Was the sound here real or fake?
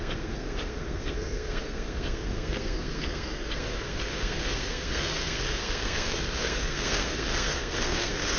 fake